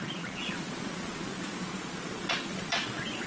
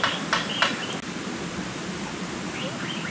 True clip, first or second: second